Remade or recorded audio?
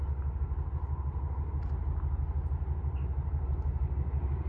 recorded